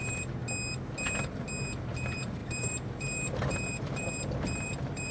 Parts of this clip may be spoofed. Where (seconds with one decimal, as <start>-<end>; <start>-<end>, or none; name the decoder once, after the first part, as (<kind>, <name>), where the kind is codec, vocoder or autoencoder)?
0.0-0.4 (vocoder, BigVGAN v2); 1.6-5.1